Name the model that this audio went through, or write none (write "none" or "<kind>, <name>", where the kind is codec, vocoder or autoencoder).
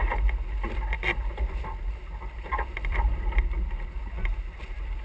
none